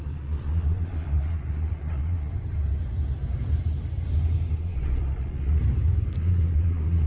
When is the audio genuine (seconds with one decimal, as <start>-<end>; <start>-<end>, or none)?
2.3-4.6; 5.6-6.2